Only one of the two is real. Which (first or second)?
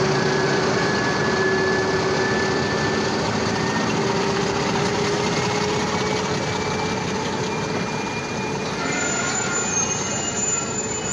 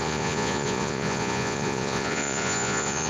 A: first